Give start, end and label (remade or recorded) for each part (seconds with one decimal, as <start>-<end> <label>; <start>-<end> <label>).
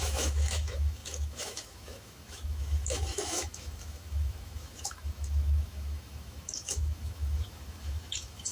0.0-8.5 remade